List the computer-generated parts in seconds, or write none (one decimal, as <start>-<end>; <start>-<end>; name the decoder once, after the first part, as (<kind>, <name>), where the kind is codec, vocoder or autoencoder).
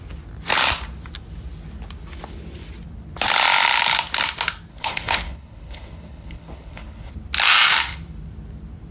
4.7-7.1 (codec, HILCodec)